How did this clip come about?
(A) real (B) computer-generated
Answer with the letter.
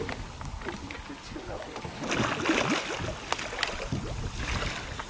A